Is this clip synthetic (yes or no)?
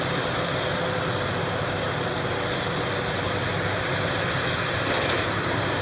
no